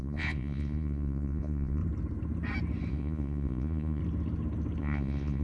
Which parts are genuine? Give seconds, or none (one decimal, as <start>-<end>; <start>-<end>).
1.8-2.9; 4.0-4.8